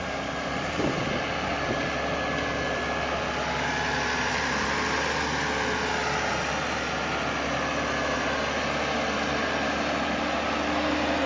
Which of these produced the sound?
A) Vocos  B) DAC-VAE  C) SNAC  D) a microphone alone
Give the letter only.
D